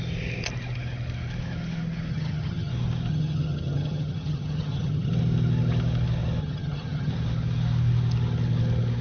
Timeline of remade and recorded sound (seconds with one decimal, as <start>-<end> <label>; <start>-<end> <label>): 0.0-2.1 recorded; 2.1-2.7 remade; 2.7-3.1 recorded; 3.1-5.1 remade; 5.1-6.4 recorded; 6.4-7.1 remade; 7.1-9.0 recorded